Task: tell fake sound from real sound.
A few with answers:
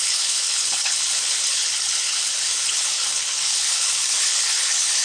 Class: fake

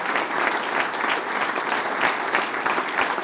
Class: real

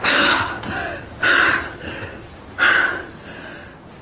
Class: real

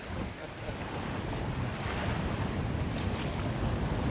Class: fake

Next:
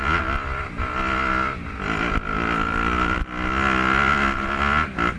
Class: real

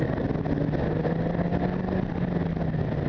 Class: real